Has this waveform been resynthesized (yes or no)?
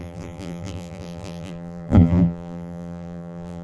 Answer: yes